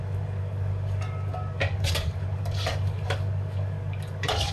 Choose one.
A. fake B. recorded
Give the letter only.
A